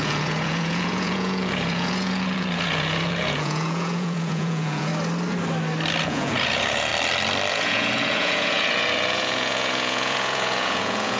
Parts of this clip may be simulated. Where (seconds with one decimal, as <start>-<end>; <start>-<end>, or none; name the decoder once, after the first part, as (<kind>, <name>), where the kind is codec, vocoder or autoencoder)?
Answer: 0.0-4.9 (vocoder, Vocos); 6.0-6.9; 7.5-11.2